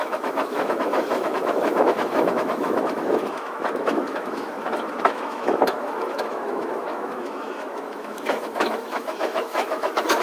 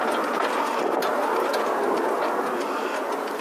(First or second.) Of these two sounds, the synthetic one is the first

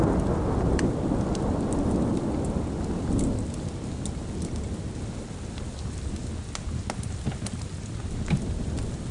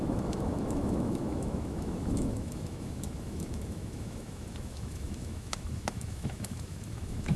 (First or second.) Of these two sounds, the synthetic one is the second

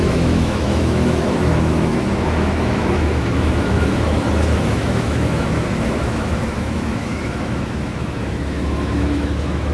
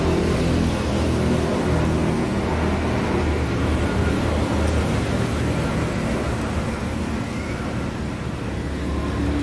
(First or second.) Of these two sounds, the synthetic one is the first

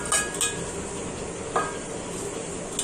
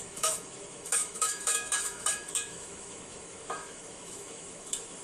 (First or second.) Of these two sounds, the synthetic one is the second